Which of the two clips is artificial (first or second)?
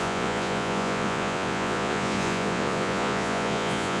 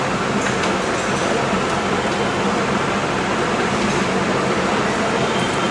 first